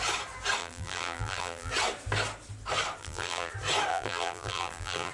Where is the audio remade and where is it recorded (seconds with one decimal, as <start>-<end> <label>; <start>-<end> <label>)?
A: 0.0-0.6 recorded; 0.6-1.7 remade; 1.7-3.0 recorded; 3.0-3.5 remade; 3.5-3.9 recorded; 3.9-5.1 remade